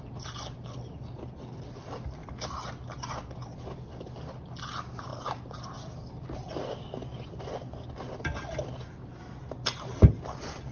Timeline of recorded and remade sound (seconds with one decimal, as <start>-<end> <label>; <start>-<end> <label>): 0.0-10.7 recorded